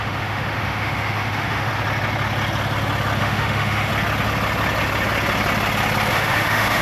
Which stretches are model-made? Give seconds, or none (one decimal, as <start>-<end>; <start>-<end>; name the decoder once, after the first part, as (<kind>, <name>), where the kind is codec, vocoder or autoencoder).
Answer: 0.0-1.7 (autoencoder, DAC-VAE); 3.2-3.9; 6.1-6.8